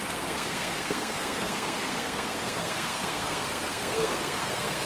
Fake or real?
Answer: fake